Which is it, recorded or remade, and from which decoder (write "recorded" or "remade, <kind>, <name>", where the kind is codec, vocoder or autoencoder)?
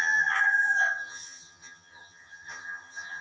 remade, vocoder, HiFi-GAN